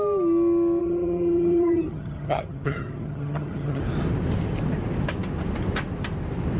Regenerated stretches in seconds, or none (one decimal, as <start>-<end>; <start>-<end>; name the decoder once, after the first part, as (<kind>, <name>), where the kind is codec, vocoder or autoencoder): 0.8-3.8 (vocoder, HiFi-GAN)